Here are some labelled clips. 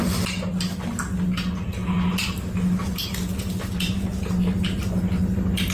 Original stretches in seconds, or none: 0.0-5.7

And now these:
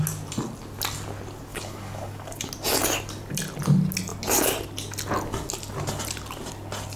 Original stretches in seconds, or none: 0.0-1.5; 2.5-7.0

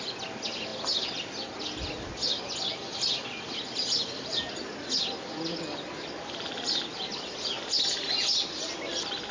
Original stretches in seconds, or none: 0.0-9.3

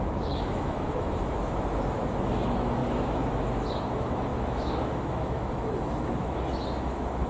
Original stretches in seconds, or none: none

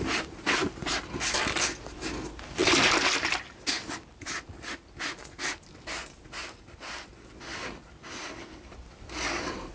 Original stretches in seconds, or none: 0.0-9.7

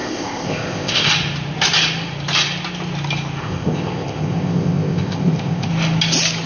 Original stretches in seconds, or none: 1.1-3.4; 5.7-6.5